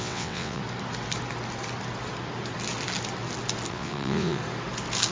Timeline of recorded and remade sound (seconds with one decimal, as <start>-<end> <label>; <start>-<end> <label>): 0.0-0.6 remade; 0.6-3.7 recorded; 3.7-4.4 remade; 4.4-5.1 recorded

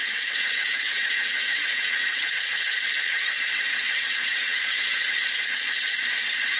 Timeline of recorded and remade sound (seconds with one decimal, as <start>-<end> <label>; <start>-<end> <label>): 0.0-2.3 remade; 2.3-3.5 recorded; 3.5-5.4 remade; 5.4-6.6 recorded

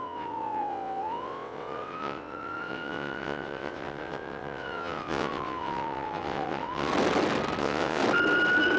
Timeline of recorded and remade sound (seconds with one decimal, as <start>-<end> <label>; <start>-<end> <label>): 0.0-6.9 remade; 6.9-7.6 recorded; 7.6-8.0 remade; 8.0-8.8 recorded

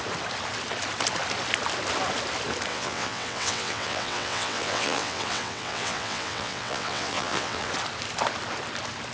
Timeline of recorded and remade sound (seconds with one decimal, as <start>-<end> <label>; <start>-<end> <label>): 0.0-2.7 recorded; 2.7-7.7 remade; 7.7-9.1 recorded